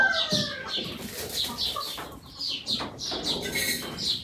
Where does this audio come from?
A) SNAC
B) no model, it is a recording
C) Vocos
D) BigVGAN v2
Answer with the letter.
D